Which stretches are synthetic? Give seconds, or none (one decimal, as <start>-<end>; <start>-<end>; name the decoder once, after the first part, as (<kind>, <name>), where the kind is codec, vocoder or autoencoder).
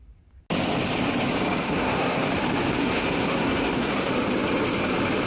1.6-2.3 (codec, SNAC); 2.7-4.1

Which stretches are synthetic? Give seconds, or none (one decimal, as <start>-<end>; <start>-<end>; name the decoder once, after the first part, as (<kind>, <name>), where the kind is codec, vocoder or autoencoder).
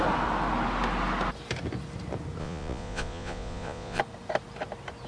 2.4-4.0 (vocoder, Vocos)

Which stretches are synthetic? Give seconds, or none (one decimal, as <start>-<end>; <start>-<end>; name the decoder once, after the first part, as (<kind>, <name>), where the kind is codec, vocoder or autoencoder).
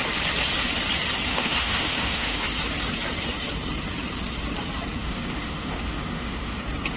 1.3-2.4 (autoencoder, DAC-VAE); 5.0-6.6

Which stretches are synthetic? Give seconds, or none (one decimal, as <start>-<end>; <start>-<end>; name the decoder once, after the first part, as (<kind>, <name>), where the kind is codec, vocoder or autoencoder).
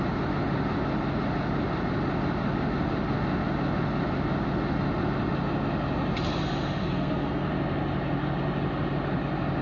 6.8-7.5 (codec, SNAC)